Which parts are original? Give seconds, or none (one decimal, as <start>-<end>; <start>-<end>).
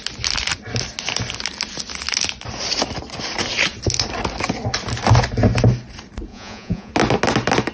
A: 0.0-6.3; 6.9-7.7